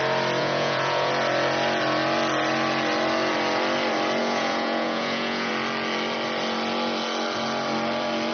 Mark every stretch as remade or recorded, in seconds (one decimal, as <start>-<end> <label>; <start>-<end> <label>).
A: 0.0-0.4 recorded; 0.4-1.1 remade; 1.1-4.2 recorded; 4.2-5.5 remade; 5.5-8.3 recorded